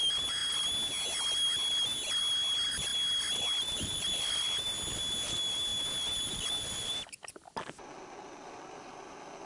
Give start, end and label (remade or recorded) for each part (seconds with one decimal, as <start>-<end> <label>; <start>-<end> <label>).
0.0-9.5 recorded